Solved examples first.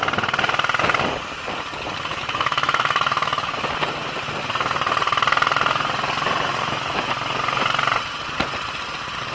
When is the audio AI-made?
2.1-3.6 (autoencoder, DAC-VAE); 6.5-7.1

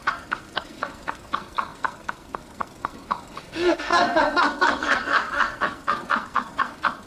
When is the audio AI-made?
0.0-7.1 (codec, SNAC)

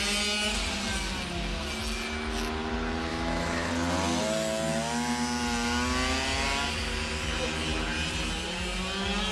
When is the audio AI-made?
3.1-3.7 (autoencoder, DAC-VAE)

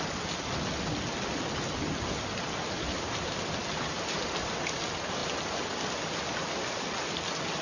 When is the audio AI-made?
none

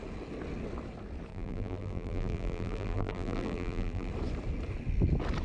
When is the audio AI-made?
1.3-4.1 (vocoder, BigVGAN v2)

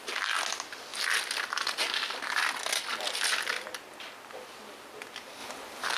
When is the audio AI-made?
none

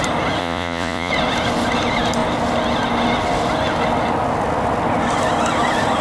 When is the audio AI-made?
0.4-1.1 (vocoder, Vocos)